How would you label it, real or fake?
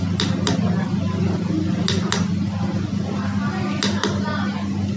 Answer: real